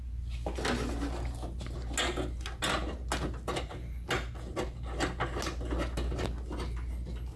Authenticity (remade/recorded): recorded